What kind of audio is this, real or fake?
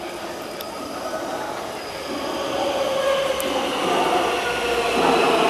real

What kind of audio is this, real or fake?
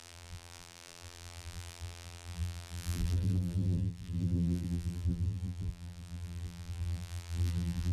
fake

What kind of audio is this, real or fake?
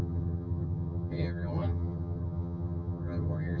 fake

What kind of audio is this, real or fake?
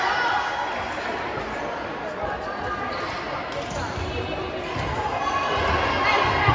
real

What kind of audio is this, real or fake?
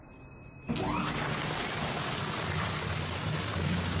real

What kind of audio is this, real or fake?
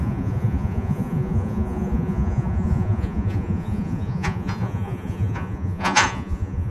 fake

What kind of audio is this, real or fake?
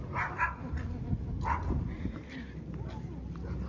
real